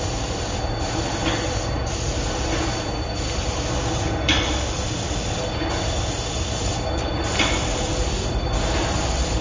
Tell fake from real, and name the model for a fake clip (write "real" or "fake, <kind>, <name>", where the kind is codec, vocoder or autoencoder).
real